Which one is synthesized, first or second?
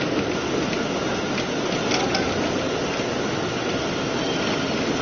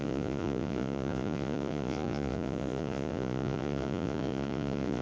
second